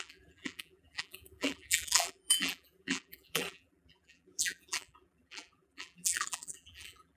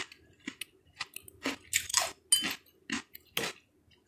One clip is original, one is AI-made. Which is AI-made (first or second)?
first